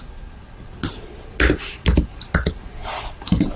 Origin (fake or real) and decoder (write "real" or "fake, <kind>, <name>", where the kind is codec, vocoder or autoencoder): real